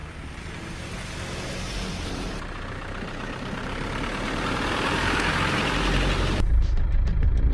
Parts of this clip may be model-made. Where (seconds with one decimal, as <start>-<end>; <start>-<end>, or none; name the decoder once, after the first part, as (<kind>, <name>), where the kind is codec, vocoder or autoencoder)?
1.8-7.5 (vocoder, BigVGAN v2)